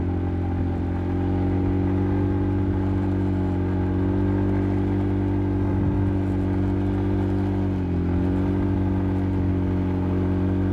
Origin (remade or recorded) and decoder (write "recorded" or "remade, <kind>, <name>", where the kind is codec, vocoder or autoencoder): recorded